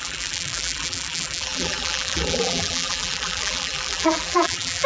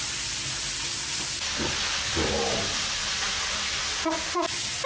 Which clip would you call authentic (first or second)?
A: second